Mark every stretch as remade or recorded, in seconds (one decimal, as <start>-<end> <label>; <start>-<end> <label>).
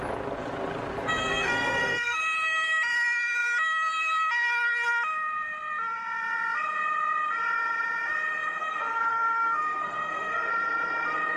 0.0-1.2 recorded; 1.2-2.2 remade; 2.2-8.6 recorded; 8.6-10.5 remade; 10.5-11.4 recorded